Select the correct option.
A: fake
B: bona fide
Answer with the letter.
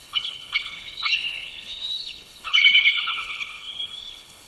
A